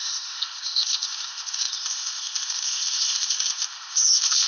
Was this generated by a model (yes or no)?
yes